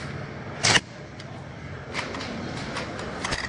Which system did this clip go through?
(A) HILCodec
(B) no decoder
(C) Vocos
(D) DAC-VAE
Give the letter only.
B